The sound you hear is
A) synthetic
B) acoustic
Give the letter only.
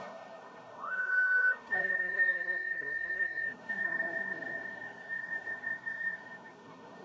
A